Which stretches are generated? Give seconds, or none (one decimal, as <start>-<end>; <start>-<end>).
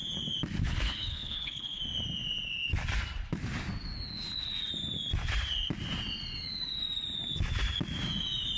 0.6-1.8